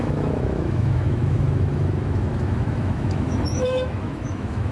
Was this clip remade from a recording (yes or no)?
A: yes